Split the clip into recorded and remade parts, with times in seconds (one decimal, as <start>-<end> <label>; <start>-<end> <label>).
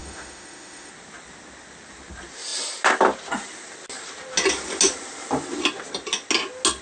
0.0-0.9 remade; 0.9-6.8 recorded